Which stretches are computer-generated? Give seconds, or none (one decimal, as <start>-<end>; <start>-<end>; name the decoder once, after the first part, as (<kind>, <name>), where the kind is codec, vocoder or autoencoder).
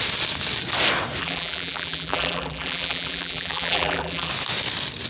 1.2-4.3 (vocoder, BigVGAN v2)